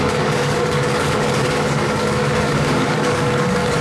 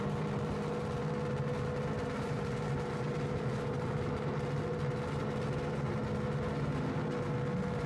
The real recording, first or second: second